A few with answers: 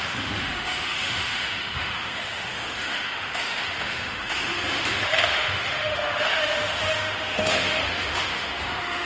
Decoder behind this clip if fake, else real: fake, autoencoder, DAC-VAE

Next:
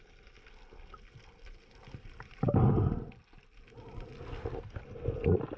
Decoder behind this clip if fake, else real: real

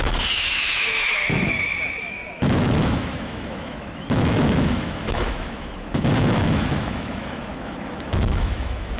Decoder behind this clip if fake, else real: fake, autoencoder, DAC-VAE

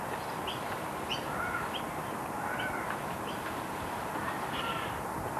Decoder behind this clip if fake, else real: real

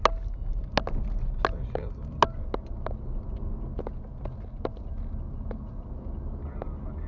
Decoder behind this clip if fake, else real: real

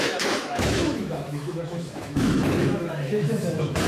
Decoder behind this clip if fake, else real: fake, autoencoder, DAC-VAE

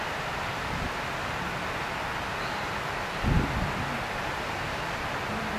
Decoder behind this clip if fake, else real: real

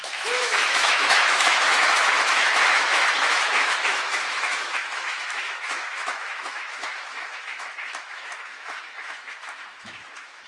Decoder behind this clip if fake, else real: fake, autoencoder, DAC-VAE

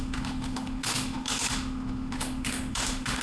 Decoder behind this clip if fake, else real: fake, autoencoder, DAC-VAE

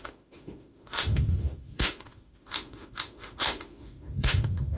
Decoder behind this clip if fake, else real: fake, autoencoder, DAC-VAE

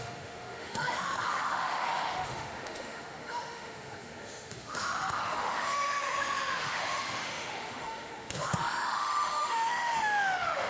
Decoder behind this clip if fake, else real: fake, autoencoder, DAC-VAE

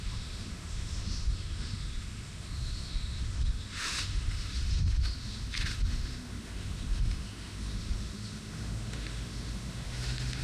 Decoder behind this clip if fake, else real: fake, autoencoder, DAC-VAE